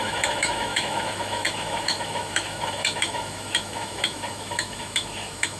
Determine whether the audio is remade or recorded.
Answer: remade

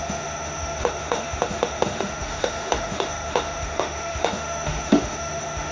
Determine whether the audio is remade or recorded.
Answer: remade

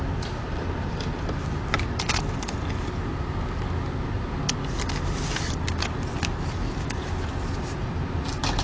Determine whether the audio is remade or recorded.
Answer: recorded